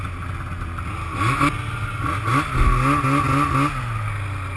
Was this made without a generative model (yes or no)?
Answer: yes